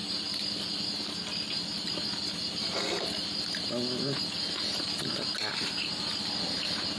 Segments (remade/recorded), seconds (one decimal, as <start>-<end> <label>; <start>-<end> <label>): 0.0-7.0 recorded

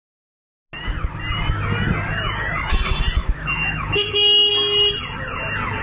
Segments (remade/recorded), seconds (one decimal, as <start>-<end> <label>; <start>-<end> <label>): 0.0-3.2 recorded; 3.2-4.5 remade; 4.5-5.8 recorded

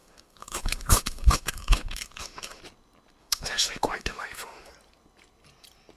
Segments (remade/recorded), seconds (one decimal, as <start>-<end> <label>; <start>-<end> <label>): 0.0-2.6 remade; 2.6-3.2 recorded; 3.2-4.7 remade; 4.7-6.0 recorded

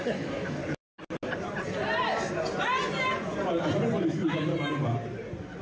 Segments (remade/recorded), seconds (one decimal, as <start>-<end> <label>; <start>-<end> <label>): 0.0-0.6 remade; 0.6-4.0 recorded; 4.0-4.5 remade; 4.5-5.6 recorded

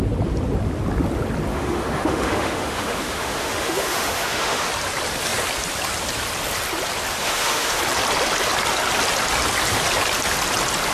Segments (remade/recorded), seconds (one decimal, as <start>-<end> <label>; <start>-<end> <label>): 0.0-1.5 recorded; 1.5-4.7 remade; 4.7-7.2 recorded; 7.2-7.8 remade; 7.8-10.9 recorded

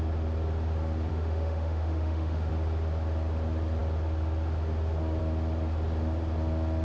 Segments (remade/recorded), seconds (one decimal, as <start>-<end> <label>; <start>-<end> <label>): 0.0-1.1 recorded; 1.1-2.5 remade; 2.5-6.8 recorded

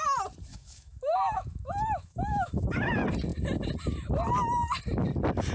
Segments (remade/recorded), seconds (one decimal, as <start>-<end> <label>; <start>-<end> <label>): 0.0-0.5 recorded; 0.5-2.9 remade; 2.9-5.5 recorded